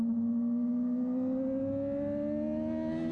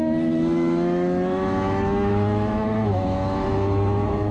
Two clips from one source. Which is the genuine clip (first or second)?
first